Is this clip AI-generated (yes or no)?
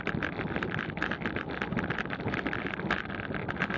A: no